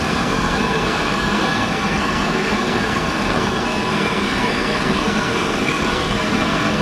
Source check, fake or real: fake